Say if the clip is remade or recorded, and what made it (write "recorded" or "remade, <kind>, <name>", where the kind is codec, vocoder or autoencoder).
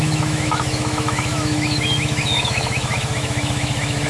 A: remade, autoencoder, DAC-VAE